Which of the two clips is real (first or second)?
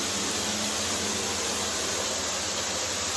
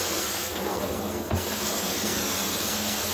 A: first